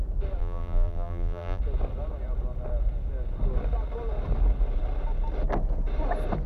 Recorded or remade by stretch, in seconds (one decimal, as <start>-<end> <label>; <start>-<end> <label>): 0.0-0.4 recorded; 0.4-1.6 remade; 1.6-6.5 recorded